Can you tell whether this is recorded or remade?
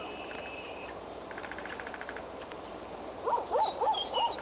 remade